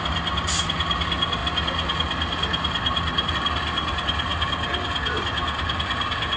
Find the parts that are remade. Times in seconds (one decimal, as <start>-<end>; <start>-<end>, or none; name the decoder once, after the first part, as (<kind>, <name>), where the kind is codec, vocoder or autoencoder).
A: none